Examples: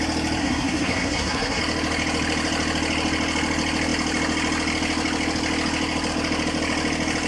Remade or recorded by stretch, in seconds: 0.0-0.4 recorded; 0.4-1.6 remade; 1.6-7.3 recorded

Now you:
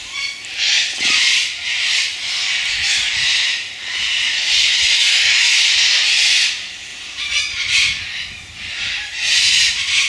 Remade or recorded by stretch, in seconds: 0.0-2.1 remade; 2.1-4.6 recorded; 4.6-9.2 remade; 9.2-10.1 recorded

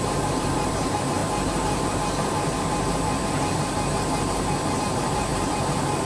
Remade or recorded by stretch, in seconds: 0.0-1.2 remade; 1.2-4.8 recorded; 4.8-5.3 remade; 5.3-6.1 recorded